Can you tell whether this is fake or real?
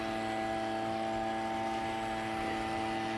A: real